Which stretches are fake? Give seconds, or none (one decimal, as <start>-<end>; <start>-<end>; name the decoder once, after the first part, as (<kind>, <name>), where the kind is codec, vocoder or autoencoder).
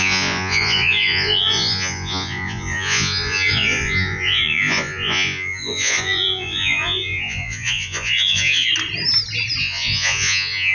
0.0-8.7 (vocoder, Vocos); 9.6-10.7